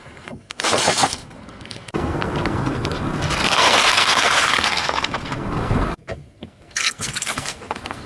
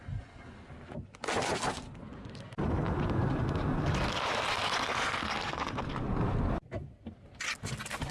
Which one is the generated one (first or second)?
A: first